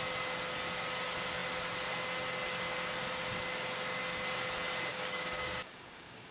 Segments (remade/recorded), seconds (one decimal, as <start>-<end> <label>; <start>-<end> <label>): 0.0-4.9 recorded; 4.9-6.3 remade